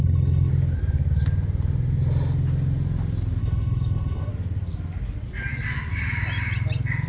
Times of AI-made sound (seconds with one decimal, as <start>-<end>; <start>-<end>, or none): 0.0-0.5; 3.4-4.3